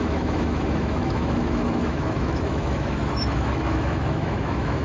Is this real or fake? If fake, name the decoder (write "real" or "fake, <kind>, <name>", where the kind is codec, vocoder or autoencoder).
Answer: fake, autoencoder, DAC-VAE